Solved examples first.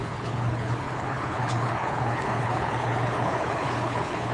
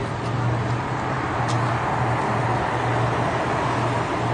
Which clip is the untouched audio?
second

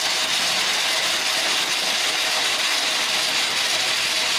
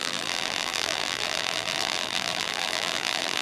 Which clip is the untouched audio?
first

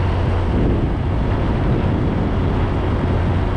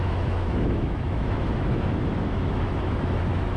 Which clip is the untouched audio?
first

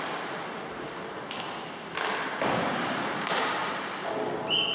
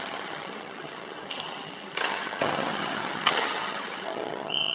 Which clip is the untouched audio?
first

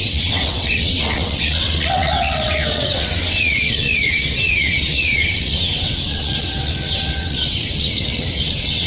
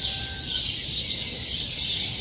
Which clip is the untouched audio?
second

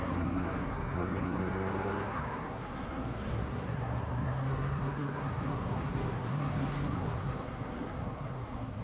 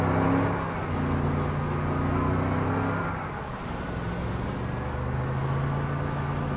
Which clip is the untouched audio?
second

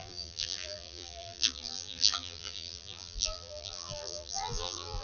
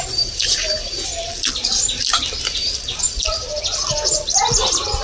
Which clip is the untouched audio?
second